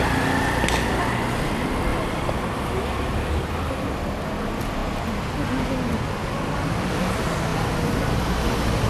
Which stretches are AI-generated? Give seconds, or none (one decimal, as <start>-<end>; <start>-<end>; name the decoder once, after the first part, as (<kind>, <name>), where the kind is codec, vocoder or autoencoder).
1.9-2.6 (vocoder, BigVGAN v2)